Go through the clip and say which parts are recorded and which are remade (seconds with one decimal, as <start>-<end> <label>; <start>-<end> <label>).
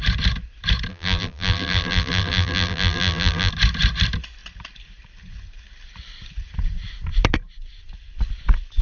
0.0-0.9 recorded; 0.9-3.5 remade; 3.5-8.8 recorded